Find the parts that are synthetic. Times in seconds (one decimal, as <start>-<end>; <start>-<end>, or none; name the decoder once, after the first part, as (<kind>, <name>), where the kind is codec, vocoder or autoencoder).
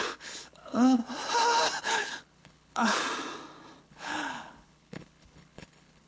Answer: 0.0-1.0 (codec, HILCodec); 1.8-3.0; 3.8-6.1